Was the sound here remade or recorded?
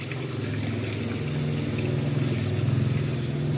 recorded